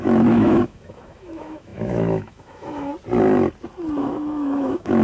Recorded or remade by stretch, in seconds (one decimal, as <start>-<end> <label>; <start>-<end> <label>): 0.0-2.9 remade; 2.9-4.0 recorded; 4.0-5.0 remade